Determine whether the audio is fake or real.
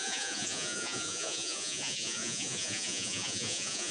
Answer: fake